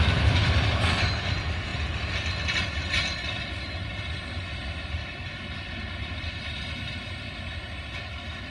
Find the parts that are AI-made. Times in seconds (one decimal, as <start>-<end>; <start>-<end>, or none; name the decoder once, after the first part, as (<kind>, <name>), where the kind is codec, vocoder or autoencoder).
none